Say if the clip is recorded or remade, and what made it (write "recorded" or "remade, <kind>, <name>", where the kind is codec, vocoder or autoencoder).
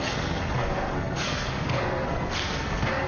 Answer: remade, codec, SNAC